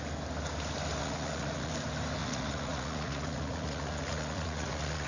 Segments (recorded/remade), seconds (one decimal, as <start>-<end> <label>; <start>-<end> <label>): 0.0-1.0 recorded; 1.0-1.7 remade; 1.7-2.2 recorded; 2.2-5.1 remade